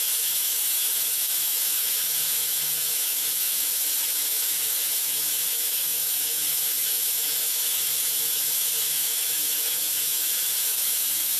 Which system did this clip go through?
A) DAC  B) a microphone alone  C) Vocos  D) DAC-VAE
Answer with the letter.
D